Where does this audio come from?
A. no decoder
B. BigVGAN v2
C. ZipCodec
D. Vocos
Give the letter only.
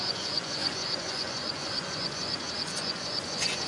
D